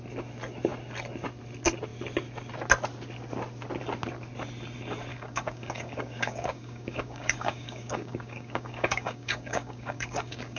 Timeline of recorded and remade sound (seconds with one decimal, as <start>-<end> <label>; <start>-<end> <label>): 0.0-5.1 recorded; 5.1-10.6 remade

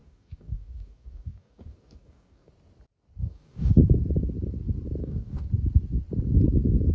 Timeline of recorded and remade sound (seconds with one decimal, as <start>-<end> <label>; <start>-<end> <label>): 0.0-2.5 remade; 2.5-3.2 recorded; 3.2-3.7 remade; 3.7-5.0 recorded; 5.0-5.5 remade; 5.5-6.9 recorded

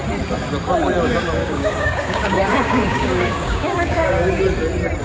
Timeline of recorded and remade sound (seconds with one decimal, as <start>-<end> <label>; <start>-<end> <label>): 0.0-1.4 recorded; 1.4-4.4 remade; 4.4-5.0 recorded

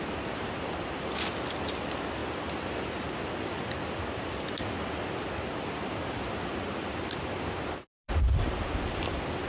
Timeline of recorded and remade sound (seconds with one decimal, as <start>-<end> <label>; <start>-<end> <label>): 0.0-9.5 recorded

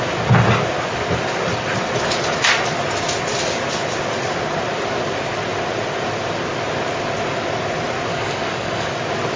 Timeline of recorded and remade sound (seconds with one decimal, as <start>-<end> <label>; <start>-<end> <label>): 0.0-8.1 recorded; 8.1-8.9 remade; 8.9-9.4 recorded